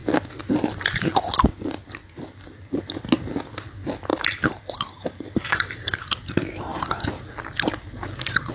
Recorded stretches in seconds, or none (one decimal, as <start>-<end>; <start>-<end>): 0.0-4.1; 6.0-8.5